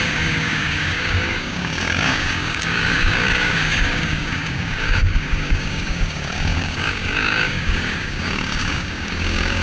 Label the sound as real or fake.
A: fake